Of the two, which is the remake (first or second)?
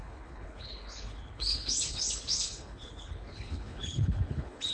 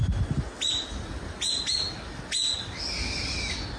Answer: first